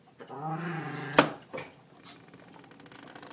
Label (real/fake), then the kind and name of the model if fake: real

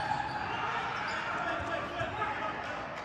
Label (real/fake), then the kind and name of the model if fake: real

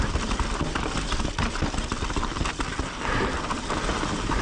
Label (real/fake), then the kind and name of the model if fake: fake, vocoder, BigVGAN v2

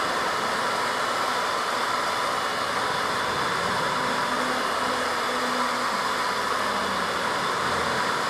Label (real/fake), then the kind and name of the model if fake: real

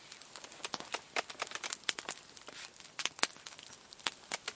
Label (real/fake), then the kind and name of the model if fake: real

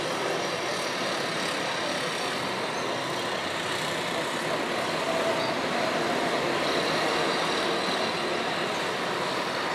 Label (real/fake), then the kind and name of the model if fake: real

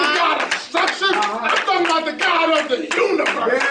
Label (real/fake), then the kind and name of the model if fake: real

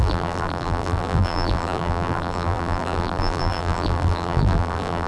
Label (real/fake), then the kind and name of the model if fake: fake, vocoder, BigVGAN v2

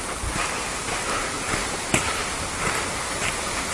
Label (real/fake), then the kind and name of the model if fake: real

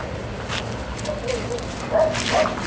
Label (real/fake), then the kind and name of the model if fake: real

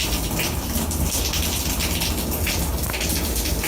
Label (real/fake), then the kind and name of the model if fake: real